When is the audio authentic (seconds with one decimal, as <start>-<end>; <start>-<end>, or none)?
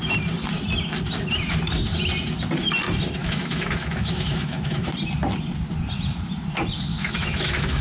0.0-3.2; 4.9-6.9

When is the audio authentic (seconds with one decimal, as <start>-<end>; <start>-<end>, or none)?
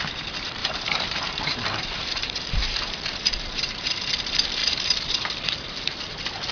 0.0-0.6; 4.0-4.6; 6.1-6.5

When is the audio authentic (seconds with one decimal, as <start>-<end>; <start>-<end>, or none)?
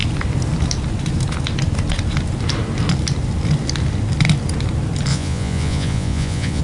0.0-5.1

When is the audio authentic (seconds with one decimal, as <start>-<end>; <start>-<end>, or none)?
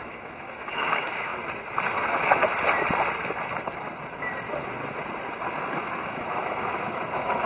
1.3-2.0; 2.4-5.7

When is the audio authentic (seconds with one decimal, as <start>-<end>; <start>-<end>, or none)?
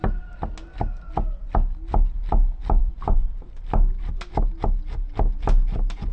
0.0-2.8; 3.6-6.1